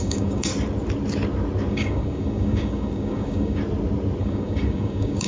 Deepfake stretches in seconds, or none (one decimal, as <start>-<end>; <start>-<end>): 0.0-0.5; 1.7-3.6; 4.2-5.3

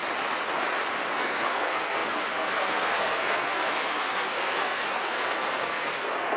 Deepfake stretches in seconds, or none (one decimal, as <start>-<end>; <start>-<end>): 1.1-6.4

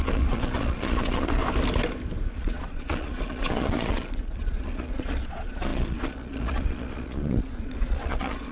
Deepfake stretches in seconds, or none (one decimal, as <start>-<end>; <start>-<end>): 0.0-1.4; 2.3-8.5

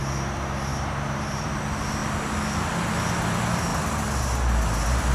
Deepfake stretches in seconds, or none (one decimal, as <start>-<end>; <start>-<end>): 0.7-1.6

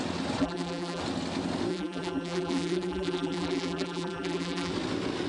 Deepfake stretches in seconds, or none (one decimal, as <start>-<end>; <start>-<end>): 0.4-1.0; 1.7-4.7